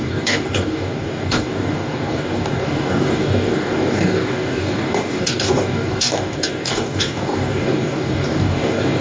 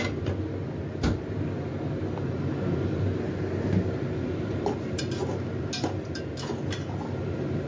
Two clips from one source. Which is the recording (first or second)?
second